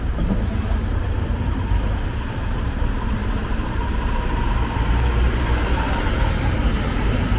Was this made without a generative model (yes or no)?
no